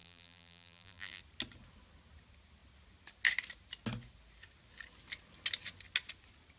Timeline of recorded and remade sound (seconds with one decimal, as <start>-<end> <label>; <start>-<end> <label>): 0.0-1.2 remade; 1.2-6.6 recorded